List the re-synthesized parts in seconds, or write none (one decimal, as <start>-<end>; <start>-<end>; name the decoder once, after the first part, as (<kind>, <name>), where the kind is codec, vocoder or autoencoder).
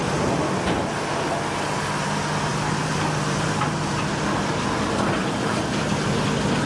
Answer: 2.5-4.1 (vocoder, BigVGAN v2); 5.2-5.9